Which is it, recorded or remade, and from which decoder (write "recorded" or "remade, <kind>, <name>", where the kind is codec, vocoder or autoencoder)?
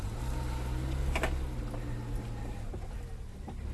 recorded